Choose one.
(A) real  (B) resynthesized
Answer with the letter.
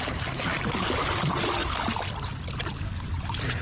B